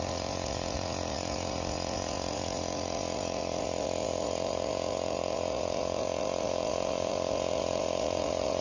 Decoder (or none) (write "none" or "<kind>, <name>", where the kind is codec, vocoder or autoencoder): vocoder, Vocos